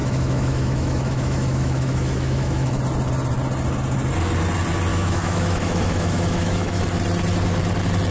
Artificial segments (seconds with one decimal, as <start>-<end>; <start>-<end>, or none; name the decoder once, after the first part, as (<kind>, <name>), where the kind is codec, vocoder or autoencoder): 0.0-2.8 (autoencoder, DAC-VAE); 4.9-6.8

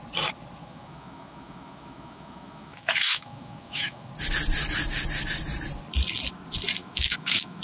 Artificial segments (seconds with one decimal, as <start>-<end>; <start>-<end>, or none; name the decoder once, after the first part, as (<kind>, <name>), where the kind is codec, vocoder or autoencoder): 0.6-4.1 (autoencoder, DAC-VAE); 6.8-7.6

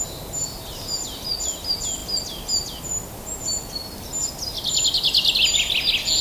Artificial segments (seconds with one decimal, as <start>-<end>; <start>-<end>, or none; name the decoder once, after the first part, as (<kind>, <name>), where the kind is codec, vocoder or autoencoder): none

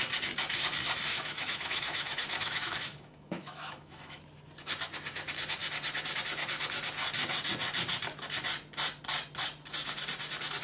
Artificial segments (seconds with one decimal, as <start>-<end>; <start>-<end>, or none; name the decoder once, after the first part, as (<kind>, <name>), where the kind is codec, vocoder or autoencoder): 1.1-4.2 (autoencoder, DAC-VAE)

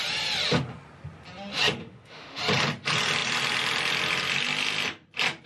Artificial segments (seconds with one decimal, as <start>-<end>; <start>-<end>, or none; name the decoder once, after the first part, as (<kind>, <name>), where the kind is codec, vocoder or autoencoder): 1.8-2.4 (autoencoder, DAC-VAE)